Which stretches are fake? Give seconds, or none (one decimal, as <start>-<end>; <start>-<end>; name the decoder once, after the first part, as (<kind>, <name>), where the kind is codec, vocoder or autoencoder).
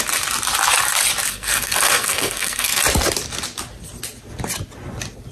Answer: 1.3-2.8 (codec, SNAC)